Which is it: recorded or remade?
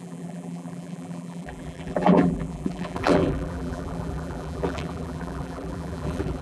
remade